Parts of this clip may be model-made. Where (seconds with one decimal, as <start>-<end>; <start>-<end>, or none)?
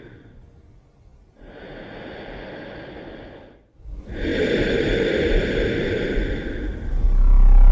none